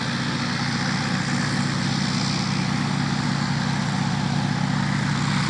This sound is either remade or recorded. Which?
recorded